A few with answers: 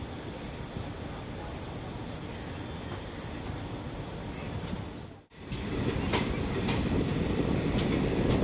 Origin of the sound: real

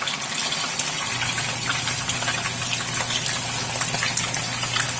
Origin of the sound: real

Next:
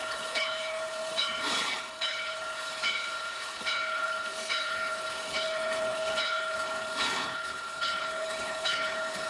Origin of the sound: fake